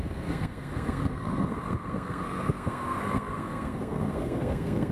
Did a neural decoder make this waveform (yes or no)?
yes